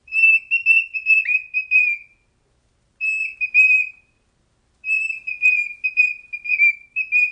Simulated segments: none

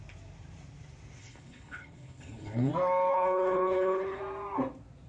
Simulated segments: 1.2-2.7; 3.1-4.2